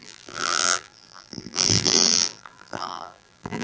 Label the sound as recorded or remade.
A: remade